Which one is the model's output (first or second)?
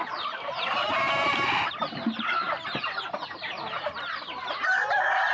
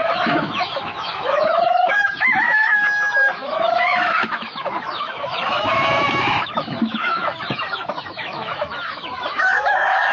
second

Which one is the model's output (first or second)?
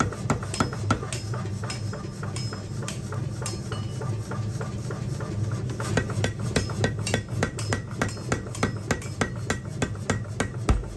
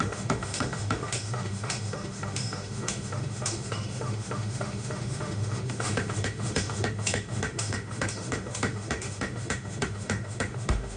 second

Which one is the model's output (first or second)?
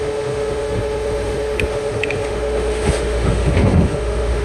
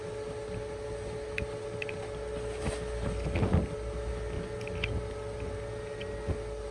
first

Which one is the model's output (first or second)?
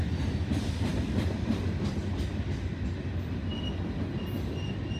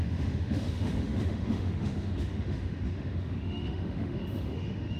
second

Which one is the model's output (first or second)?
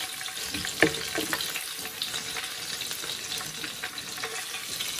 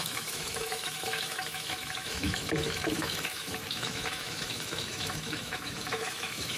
second